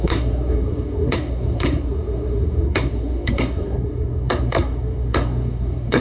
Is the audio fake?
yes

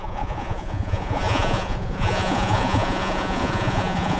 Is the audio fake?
yes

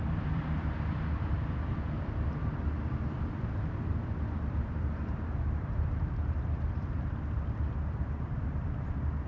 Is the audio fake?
yes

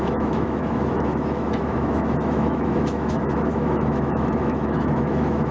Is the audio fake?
yes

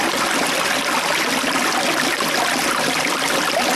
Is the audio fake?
no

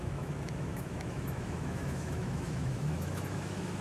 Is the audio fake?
yes